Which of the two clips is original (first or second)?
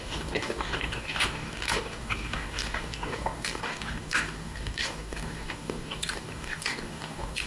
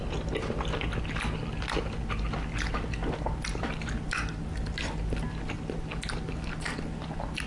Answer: second